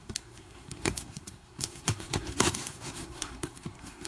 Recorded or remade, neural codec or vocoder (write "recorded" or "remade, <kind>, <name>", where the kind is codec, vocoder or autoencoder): remade, codec, SNAC